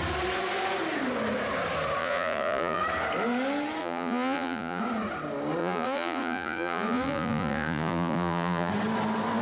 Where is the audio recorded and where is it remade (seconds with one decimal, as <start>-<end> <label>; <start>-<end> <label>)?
0.0-2.0 recorded; 2.0-2.8 remade; 2.8-3.8 recorded; 3.8-4.8 remade; 4.8-5.6 recorded; 5.6-8.7 remade; 8.7-9.4 recorded

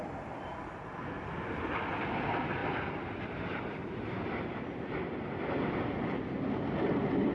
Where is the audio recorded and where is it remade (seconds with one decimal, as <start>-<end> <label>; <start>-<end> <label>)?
0.0-7.3 recorded

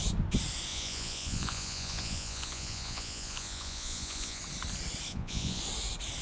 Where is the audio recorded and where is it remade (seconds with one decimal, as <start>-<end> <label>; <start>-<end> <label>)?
0.0-0.7 recorded; 0.7-4.4 remade; 4.4-5.1 recorded; 5.1-5.6 remade; 5.6-6.2 recorded

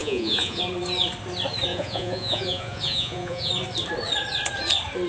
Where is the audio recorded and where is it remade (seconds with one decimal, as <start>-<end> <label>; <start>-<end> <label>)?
0.0-0.6 remade; 0.6-1.7 recorded; 1.7-3.5 remade; 3.5-5.1 recorded

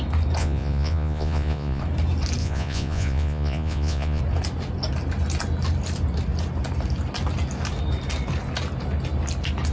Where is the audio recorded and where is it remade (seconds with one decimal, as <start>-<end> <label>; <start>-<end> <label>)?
0.0-0.4 recorded; 0.4-1.8 remade; 1.8-2.4 recorded; 2.4-4.2 remade; 4.2-9.7 recorded

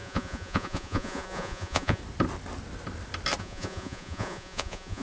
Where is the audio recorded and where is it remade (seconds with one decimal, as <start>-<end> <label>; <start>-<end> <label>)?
0.0-2.0 remade; 2.0-3.4 recorded; 3.4-5.0 remade

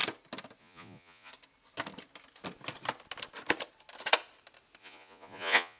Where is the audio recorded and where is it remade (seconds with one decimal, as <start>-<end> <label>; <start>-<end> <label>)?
0.0-0.6 recorded; 0.6-1.3 remade; 1.3-4.8 recorded; 4.8-5.8 remade